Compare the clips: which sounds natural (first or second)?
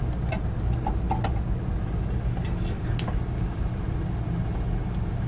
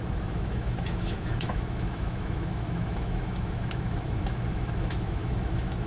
first